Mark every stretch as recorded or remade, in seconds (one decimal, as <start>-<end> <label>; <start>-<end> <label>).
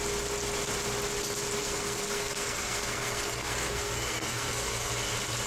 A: 0.0-1.6 recorded; 1.6-4.9 remade; 4.9-5.5 recorded